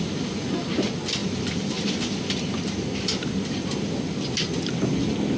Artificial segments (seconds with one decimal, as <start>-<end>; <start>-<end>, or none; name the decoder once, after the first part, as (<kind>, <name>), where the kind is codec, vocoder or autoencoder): 1.2-3.3 (vocoder, BigVGAN v2)